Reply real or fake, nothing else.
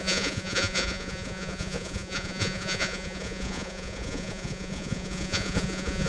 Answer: fake